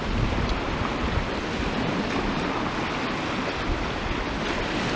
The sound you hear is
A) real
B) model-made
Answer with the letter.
A